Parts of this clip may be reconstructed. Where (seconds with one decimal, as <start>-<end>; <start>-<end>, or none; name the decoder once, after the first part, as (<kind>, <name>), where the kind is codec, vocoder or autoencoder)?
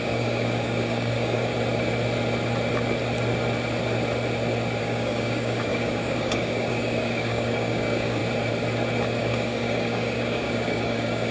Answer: 0.0-1.5 (codec, DAC); 4.8-8.2; 9.2-11.3